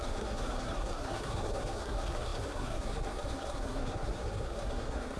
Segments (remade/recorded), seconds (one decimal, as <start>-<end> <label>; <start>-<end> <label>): 0.0-5.2 remade